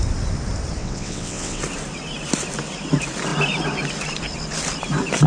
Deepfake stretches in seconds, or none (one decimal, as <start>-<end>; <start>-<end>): 0.8-1.6